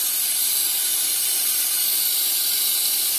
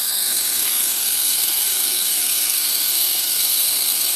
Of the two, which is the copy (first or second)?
second